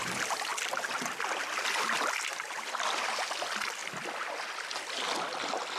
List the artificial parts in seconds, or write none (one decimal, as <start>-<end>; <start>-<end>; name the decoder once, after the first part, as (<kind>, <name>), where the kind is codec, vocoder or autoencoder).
0.5-3.0 (vocoder, BigVGAN v2); 3.8-4.9